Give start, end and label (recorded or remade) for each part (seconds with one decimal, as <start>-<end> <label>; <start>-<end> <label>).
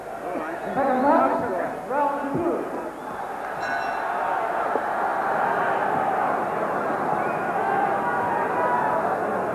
0.0-9.5 recorded